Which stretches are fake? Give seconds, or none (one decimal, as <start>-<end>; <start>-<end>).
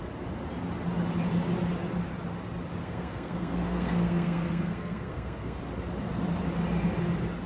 2.8-5.6